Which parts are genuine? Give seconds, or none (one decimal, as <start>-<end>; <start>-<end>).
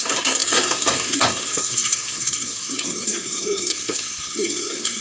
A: none